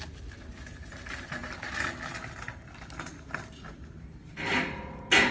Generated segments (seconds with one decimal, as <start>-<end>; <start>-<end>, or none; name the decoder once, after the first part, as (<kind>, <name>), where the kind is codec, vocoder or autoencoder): none